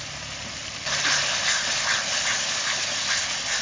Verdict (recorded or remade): recorded